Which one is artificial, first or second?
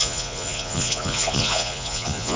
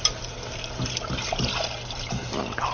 first